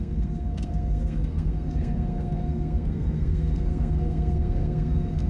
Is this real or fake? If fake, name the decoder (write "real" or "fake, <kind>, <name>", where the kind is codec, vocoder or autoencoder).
fake, codec, SNAC